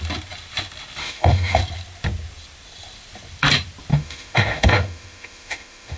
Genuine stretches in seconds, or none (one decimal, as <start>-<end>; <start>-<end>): 0.0-1.0; 1.6-3.9